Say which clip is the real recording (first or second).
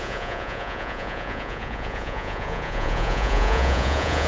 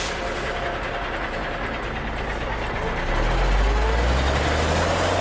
second